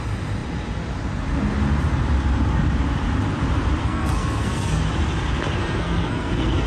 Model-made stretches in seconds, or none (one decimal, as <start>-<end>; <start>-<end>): 3.8-4.8; 5.6-6.7